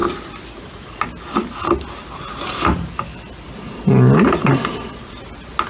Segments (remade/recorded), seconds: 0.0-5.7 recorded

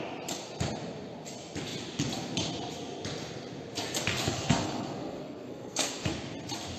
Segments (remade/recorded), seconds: 0.0-4.1 recorded; 4.1-6.1 remade; 6.1-6.8 recorded

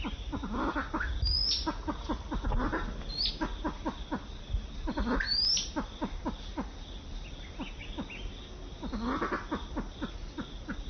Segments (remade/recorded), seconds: 0.0-10.9 recorded